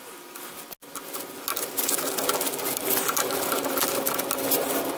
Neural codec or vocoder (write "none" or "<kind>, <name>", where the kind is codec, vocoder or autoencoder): none